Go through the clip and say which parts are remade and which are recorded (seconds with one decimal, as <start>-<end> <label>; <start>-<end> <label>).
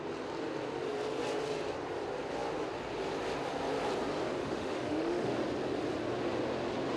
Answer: 0.0-4.4 recorded; 4.4-5.3 remade; 5.3-7.0 recorded